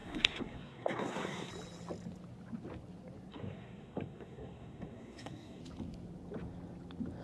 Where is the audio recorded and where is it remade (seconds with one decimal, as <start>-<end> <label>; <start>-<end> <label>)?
0.0-1.5 remade; 1.5-3.3 recorded; 3.3-5.6 remade; 5.6-7.2 recorded